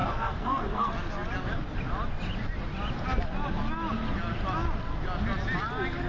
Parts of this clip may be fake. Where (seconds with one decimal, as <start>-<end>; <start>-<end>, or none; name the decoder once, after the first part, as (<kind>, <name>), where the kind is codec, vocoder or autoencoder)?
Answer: 0.0-0.9 (codec, SNAC)